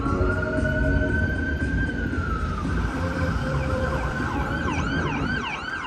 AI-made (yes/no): yes